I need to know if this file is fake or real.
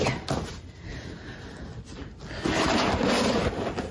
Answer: real